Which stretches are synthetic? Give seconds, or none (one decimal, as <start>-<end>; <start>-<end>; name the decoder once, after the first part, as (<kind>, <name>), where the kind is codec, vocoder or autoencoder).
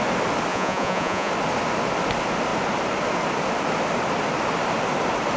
0.5-1.3 (vocoder, Vocos)